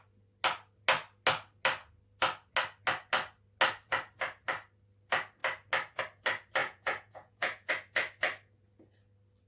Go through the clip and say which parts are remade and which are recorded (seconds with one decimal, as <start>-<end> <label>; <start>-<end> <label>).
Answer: 0.0-6.6 recorded; 6.6-7.7 remade; 7.7-9.5 recorded